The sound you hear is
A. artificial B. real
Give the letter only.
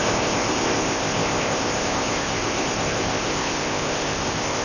A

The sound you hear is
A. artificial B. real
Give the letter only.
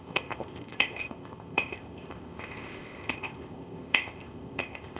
A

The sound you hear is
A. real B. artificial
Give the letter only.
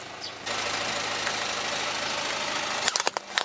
A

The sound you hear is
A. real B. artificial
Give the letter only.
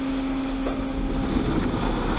A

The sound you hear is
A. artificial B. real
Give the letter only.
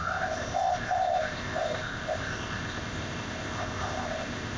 A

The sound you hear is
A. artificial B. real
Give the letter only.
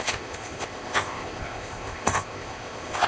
A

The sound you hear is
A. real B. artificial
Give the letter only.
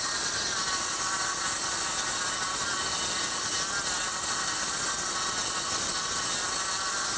A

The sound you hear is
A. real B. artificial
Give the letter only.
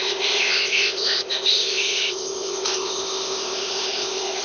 B